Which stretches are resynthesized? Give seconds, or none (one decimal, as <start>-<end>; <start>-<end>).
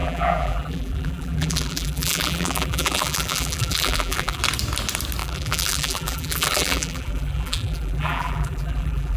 0.0-4.4; 5.2-9.2